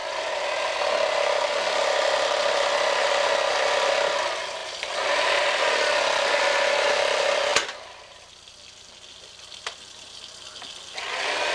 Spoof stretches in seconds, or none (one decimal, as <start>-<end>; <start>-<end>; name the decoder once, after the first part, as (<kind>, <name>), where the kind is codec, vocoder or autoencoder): 7.5-9.6 (vocoder, BigVGAN v2)